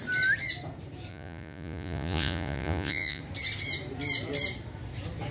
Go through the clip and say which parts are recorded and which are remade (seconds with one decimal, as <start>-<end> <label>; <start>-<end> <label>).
0.0-1.1 recorded; 1.1-3.2 remade; 3.2-5.3 recorded